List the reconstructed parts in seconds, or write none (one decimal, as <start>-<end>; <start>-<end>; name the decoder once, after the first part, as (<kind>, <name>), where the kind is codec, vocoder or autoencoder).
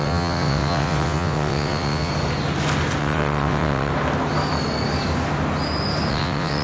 0.0-2.1 (vocoder, WaveNeXt); 3.0-3.9; 6.1-6.6